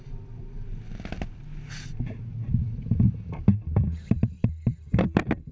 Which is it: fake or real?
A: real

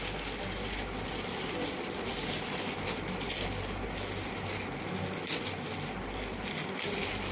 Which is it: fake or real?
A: real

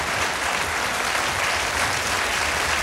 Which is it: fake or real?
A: real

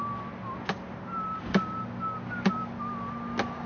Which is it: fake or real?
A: real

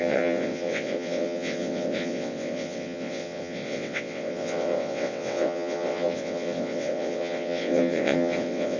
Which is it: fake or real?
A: fake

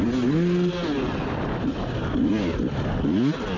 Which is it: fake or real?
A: real